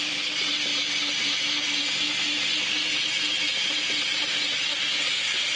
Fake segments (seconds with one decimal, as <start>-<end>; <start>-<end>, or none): none